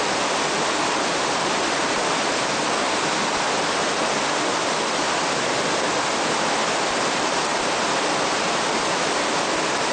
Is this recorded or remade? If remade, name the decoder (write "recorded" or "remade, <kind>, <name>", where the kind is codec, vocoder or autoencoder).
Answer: recorded